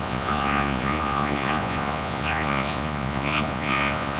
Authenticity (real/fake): fake